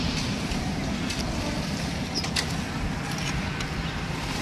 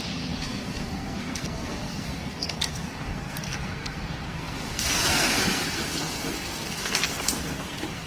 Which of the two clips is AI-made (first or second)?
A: second